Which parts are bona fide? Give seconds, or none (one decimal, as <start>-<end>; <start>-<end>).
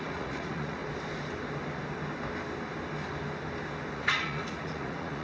0.8-3.9